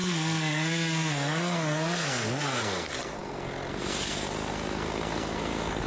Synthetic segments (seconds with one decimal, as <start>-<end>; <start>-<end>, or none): 0.0-5.9